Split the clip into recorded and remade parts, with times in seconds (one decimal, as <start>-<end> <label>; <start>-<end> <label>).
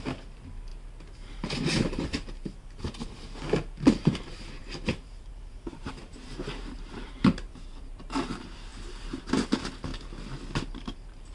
0.0-0.7 remade; 0.7-1.3 recorded; 1.3-9.9 remade; 9.9-10.6 recorded; 10.6-11.3 remade